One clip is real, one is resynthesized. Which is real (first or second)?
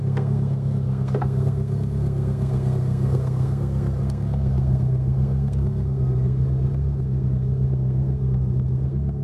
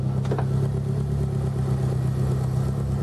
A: second